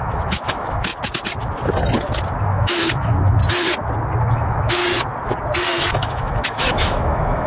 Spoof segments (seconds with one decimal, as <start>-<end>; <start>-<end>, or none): 0.0-0.9; 2.4-3.4; 4.3-4.8; 5.9-7.5